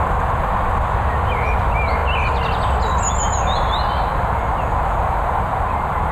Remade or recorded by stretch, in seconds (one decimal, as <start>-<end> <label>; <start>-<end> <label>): 0.0-6.1 recorded